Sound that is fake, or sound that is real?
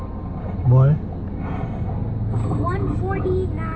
real